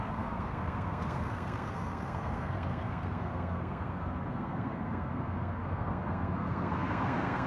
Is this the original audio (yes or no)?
no